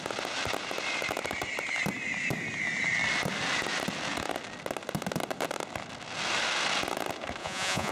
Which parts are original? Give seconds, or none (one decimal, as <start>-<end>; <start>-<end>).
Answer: 0.0-7.4